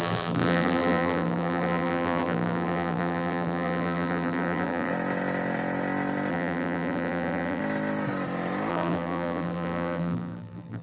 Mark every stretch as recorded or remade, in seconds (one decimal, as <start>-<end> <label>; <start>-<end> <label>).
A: 0.0-4.9 remade; 4.9-6.3 recorded; 6.3-7.6 remade; 7.6-8.7 recorded; 8.7-10.8 remade